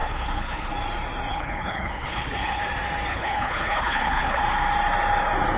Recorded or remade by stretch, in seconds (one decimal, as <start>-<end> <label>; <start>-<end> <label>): 0.0-0.7 remade; 0.7-1.3 recorded; 1.3-2.6 remade; 2.6-3.1 recorded; 3.1-4.4 remade; 4.4-5.6 recorded